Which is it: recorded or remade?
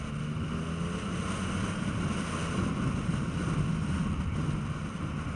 recorded